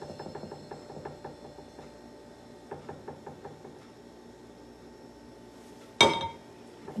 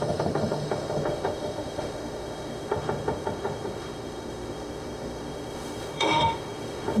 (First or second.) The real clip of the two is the first